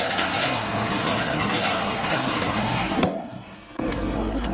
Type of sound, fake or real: fake